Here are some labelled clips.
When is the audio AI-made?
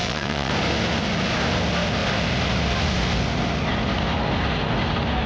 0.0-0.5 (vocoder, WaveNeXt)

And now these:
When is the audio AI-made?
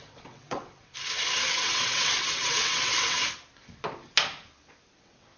0.0-0.9 (vocoder, WaveNeXt); 1.5-3.2; 4.9-5.4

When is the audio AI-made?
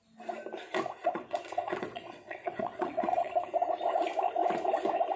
1.0-3.3 (vocoder, WaveNeXt)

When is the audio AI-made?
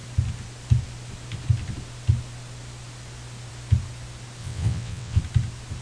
4.4-5.2 (vocoder, WaveNeXt)